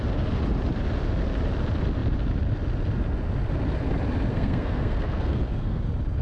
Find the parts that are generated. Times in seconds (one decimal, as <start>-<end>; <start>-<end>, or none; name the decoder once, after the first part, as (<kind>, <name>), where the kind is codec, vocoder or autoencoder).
4.3-5.8 (codec, SNAC)